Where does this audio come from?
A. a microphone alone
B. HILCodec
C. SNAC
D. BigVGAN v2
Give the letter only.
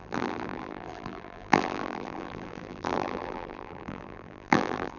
D